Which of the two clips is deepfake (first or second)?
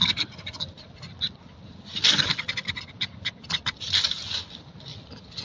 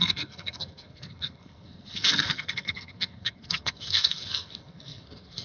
second